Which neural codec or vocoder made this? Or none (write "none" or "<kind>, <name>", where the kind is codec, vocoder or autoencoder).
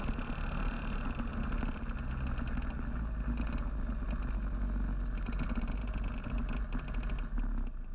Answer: none